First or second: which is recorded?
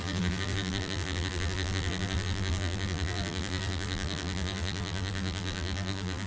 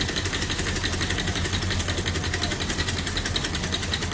second